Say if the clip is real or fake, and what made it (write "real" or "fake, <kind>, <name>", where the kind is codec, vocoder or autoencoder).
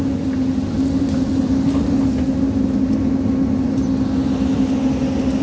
real